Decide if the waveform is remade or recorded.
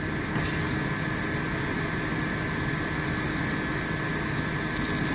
recorded